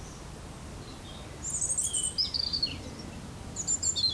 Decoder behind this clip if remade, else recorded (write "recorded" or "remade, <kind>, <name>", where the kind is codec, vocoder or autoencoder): recorded